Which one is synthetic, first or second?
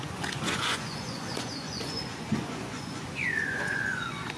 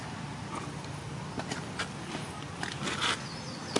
first